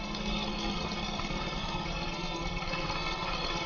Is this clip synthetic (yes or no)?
yes